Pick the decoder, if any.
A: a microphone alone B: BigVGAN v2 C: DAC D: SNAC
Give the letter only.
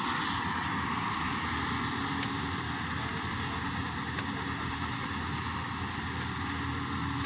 A